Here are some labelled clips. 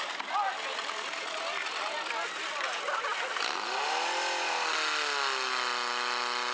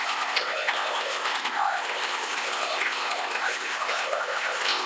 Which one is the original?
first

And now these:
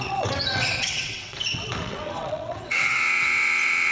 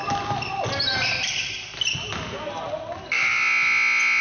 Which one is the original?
second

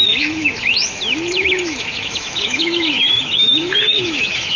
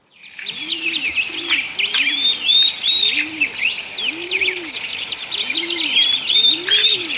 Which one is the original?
second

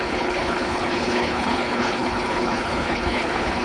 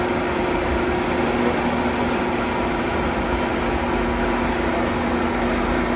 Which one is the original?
second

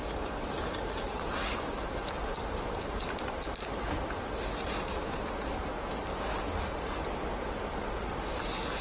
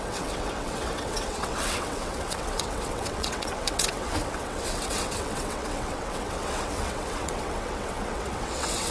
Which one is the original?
first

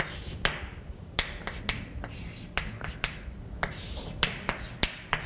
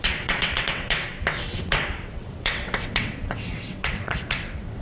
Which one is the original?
first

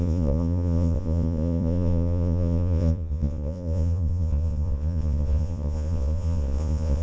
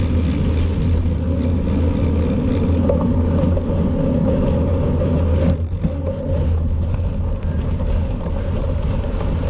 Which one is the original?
second